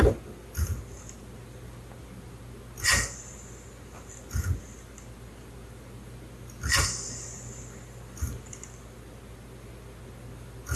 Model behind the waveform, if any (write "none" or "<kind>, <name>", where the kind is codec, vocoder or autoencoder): none